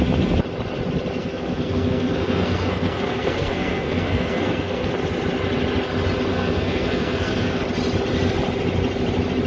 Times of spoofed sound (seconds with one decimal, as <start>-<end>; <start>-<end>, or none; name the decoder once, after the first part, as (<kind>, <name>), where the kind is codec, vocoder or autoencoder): 1.2-4.9 (codec, SNAC); 6.3-7.6